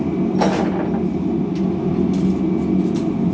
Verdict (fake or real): real